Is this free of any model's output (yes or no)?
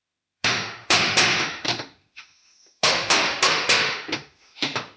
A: no